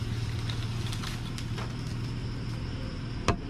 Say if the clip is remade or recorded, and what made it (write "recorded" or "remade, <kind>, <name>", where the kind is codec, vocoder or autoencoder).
recorded